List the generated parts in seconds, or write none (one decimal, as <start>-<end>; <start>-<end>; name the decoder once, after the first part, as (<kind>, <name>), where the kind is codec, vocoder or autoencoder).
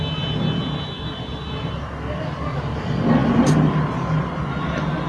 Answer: none